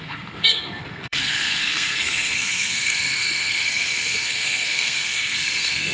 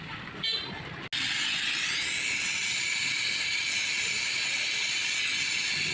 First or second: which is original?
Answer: second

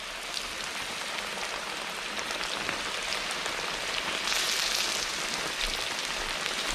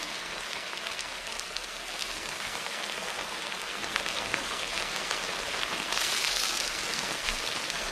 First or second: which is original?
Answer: first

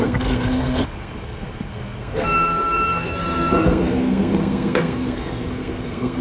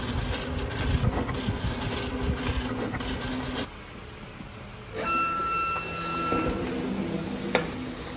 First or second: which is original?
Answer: second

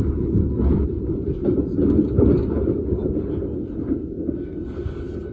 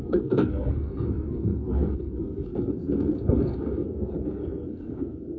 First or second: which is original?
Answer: first